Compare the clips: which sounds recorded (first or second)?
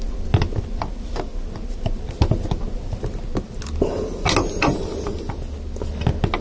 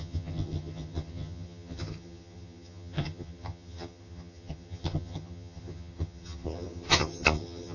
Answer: first